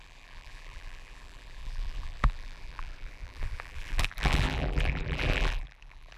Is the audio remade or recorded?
remade